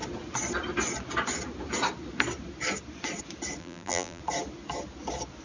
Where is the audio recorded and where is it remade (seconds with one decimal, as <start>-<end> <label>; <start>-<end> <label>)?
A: 0.0-3.6 recorded; 3.6-4.2 remade; 4.2-5.4 recorded